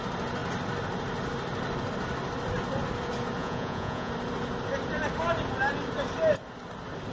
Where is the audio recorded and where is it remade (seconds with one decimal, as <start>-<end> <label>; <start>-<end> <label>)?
0.0-3.4 recorded; 3.4-4.1 remade; 4.1-7.1 recorded